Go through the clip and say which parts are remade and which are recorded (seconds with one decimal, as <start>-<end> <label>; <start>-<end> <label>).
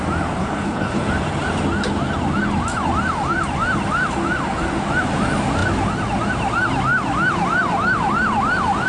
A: 0.0-0.4 recorded; 0.4-1.0 remade; 1.0-8.9 recorded